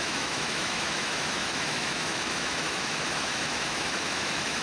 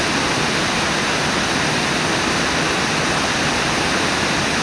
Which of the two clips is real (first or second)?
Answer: second